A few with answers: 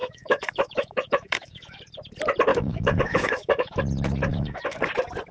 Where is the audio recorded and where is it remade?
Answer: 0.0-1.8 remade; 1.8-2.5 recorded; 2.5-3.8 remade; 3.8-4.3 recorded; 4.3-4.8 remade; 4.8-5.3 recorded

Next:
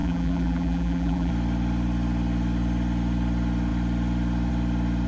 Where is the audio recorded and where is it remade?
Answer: 0.0-1.3 remade; 1.3-5.1 recorded

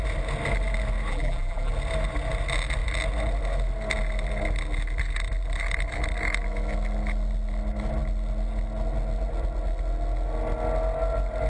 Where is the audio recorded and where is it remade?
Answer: 0.0-1.1 recorded; 1.1-1.7 remade; 1.7-11.5 recorded